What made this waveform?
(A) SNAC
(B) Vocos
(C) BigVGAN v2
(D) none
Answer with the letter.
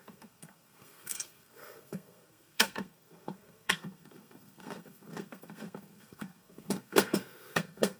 A